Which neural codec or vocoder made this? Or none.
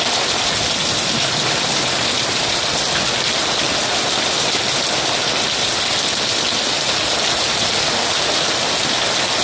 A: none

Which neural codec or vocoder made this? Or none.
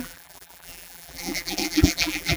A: vocoder, BigVGAN v2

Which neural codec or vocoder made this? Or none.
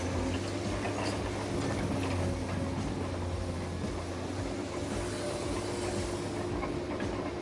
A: none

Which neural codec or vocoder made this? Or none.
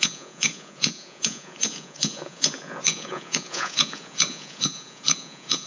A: vocoder, Vocos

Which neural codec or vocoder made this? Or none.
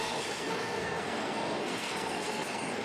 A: codec, SNAC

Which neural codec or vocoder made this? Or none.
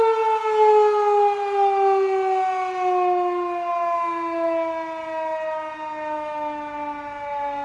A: none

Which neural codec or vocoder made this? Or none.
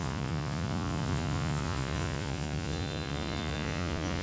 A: vocoder, Vocos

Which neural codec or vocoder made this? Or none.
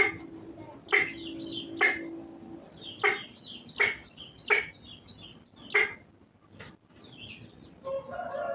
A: none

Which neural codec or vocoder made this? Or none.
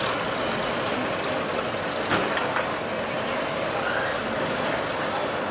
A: none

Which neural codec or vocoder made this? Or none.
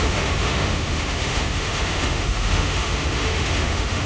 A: autoencoder, DAC-VAE